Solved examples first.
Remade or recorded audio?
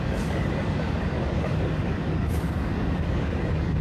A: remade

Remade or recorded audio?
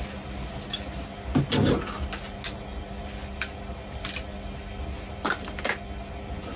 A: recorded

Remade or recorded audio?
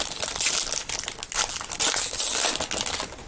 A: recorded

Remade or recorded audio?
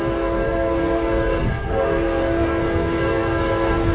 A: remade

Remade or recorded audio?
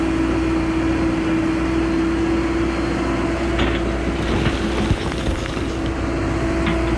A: recorded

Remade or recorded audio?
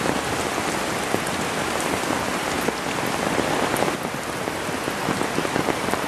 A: recorded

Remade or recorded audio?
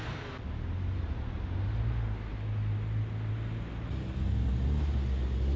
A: recorded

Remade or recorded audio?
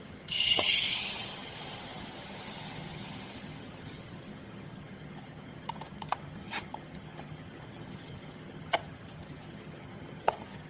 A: remade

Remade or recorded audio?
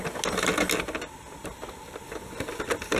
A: recorded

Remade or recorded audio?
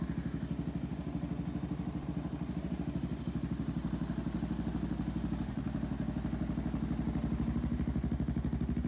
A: recorded